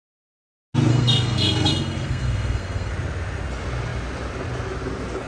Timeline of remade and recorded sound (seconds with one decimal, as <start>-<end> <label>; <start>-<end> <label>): 0.0-0.9 recorded; 0.9-2.9 remade; 2.9-5.3 recorded